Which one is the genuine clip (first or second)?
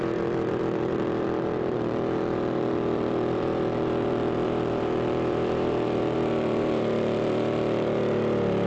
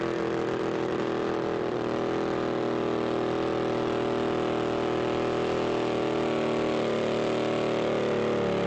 second